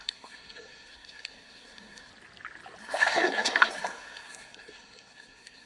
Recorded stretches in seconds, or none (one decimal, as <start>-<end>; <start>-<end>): 2.1-2.8